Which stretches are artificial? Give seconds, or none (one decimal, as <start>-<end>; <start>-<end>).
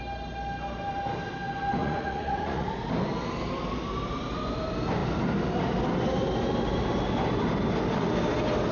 1.8-2.7